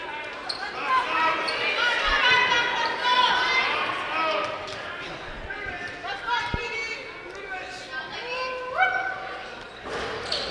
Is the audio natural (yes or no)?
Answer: yes